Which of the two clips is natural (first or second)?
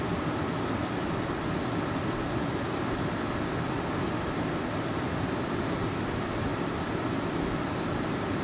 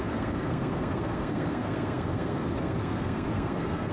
first